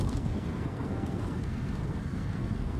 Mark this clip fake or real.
fake